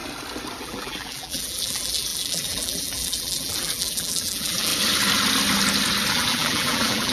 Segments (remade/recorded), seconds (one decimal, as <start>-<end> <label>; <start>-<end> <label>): 0.0-0.6 recorded; 0.6-4.7 remade; 4.7-6.1 recorded; 6.1-7.1 remade